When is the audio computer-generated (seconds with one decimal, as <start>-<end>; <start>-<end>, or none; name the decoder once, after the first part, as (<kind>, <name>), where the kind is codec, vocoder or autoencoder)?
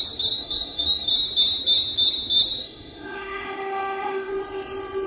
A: 0.4-1.1 (autoencoder, DAC-VAE); 2.6-4.3